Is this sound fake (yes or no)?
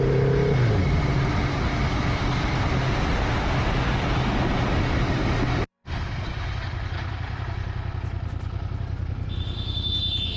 no